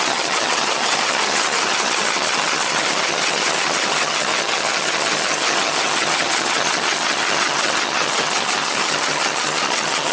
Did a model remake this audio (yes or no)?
yes